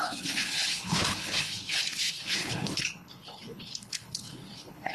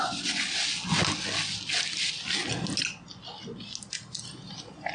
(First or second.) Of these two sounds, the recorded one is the second